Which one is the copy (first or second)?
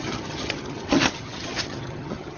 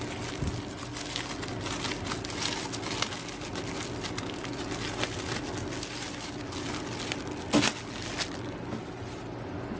first